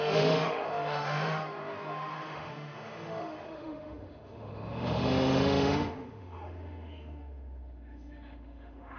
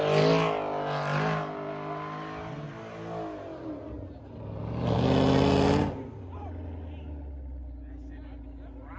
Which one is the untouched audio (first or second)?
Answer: second